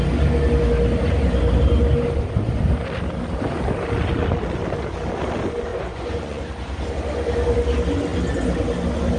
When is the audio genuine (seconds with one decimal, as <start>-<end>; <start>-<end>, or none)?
0.0-5.7; 6.4-9.2